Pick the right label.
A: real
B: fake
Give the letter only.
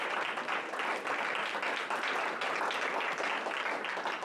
A